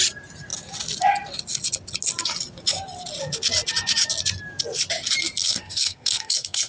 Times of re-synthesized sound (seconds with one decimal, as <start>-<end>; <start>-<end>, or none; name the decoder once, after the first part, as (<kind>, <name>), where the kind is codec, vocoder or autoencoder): 5.4-6.7 (codec, SNAC)